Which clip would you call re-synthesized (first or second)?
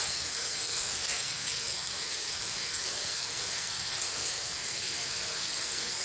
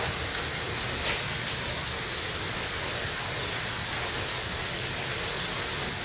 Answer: first